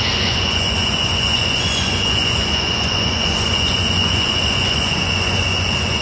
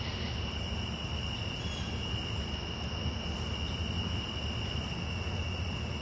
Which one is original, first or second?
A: second